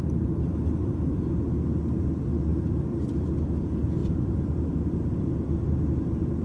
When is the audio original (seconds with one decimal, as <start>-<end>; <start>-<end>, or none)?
1.1-1.8